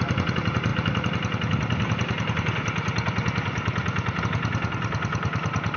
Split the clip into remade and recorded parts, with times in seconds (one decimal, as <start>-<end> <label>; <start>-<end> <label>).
0.0-5.8 recorded